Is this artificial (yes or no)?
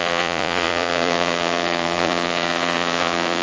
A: yes